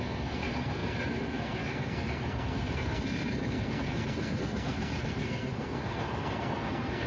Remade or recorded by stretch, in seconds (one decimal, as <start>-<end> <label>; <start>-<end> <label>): 0.0-7.1 remade